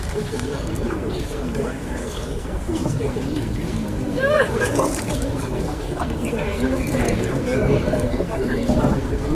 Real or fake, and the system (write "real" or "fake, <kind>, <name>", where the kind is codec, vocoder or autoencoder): fake, codec, SNAC